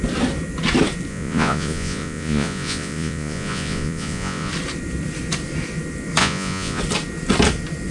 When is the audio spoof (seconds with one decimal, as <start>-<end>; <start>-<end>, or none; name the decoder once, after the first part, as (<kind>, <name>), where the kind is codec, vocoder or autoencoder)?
1.1-4.5 (vocoder, Vocos); 6.2-6.8